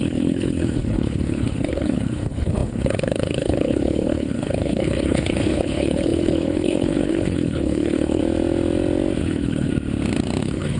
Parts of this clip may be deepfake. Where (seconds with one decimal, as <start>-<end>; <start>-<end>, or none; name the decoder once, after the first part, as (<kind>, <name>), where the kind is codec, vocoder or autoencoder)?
0.0-8.2 (codec, HILCodec); 9.2-9.7; 10.4-10.8